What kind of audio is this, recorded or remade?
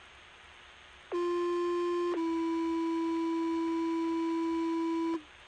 recorded